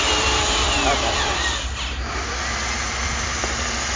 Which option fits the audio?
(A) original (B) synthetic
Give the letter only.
A